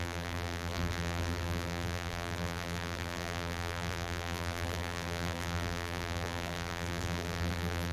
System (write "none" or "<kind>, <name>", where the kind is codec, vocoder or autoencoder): vocoder, BigVGAN v2